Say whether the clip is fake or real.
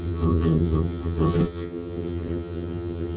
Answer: fake